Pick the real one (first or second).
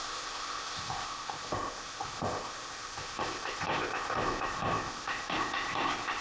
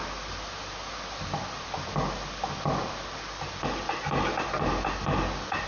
second